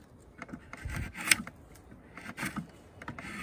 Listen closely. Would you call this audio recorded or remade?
recorded